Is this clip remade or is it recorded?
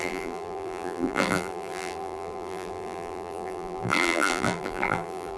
remade